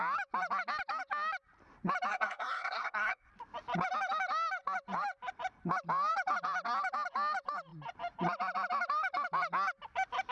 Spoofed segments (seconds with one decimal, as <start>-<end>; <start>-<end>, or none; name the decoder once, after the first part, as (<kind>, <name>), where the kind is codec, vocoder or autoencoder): 2.1-3.3 (codec, SNAC)